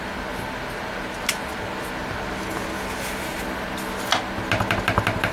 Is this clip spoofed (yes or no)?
no